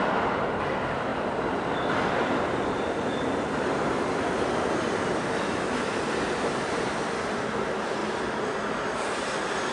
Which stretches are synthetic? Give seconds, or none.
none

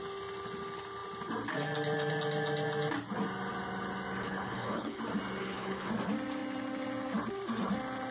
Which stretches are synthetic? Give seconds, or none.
4.2-5.0; 5.4-5.9

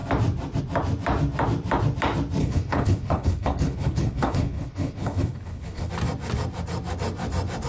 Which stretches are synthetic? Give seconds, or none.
2.4-5.9

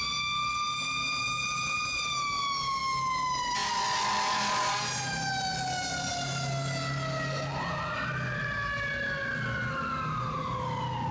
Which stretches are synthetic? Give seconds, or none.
none

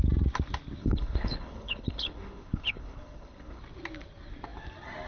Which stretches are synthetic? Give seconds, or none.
0.8-3.6